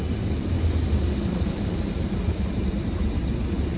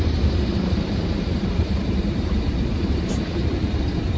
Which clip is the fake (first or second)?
second